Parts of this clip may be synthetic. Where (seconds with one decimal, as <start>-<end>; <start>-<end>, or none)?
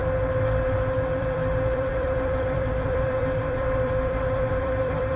1.2-5.2